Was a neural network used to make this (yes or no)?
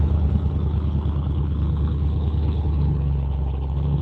yes